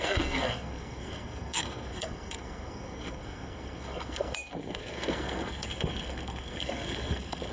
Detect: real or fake fake